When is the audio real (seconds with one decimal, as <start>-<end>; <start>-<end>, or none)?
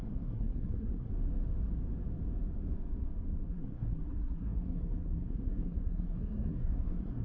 1.1-3.5